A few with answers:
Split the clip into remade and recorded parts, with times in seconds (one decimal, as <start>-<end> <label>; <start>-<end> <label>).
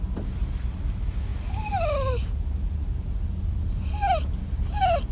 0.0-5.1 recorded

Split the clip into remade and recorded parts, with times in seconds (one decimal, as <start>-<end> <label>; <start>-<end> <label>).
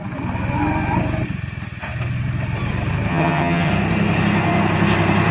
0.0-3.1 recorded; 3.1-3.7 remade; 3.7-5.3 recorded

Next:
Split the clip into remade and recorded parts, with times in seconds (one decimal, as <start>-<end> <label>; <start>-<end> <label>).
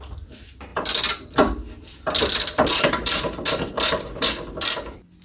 0.0-5.2 recorded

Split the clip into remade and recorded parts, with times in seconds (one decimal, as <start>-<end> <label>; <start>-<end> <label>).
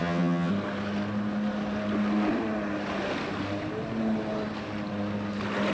0.0-0.5 remade; 0.5-5.7 recorded